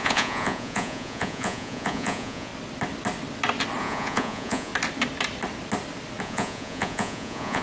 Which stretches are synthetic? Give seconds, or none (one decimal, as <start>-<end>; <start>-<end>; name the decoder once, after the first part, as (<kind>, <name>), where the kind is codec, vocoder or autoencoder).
0.0-2.5 (vocoder, Vocos); 3.8-4.7; 6.2-7.6